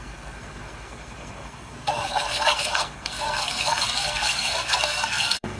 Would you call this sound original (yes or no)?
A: no